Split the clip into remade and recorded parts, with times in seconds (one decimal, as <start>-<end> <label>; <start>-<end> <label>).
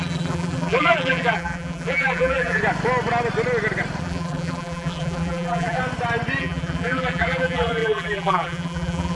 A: 0.0-2.6 remade; 2.6-4.0 recorded; 4.0-5.8 remade; 5.8-6.4 recorded; 6.4-9.1 remade